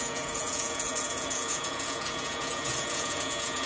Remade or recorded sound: remade